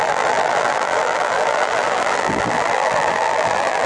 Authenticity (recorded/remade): remade